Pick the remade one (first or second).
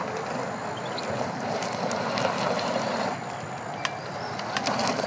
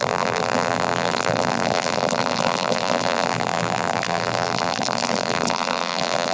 second